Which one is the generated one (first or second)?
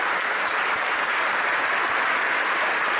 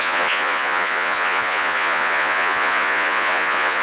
second